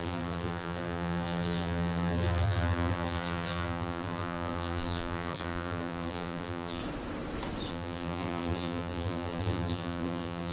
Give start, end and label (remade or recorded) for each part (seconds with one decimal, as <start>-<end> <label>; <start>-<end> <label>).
0.0-6.8 remade; 6.8-7.7 recorded; 7.7-10.5 remade